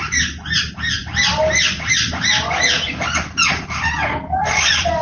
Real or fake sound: real